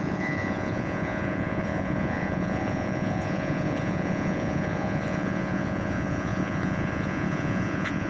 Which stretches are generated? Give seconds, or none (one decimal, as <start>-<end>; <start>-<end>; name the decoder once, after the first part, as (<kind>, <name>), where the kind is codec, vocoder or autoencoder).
0.0-8.1 (vocoder, Vocos)